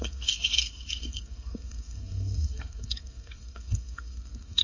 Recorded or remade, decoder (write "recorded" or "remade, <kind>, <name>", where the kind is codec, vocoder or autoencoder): remade, codec, SNAC